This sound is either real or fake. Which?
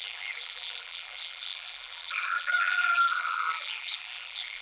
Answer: fake